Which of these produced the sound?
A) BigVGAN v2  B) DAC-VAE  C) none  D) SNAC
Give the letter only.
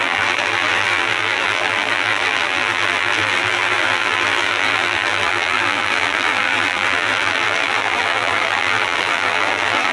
A